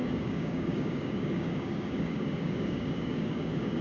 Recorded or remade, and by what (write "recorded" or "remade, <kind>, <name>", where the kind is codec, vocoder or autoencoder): remade, codec, DAC